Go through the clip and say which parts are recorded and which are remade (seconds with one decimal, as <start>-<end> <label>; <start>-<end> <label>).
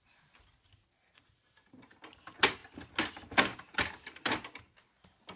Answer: 0.0-5.4 recorded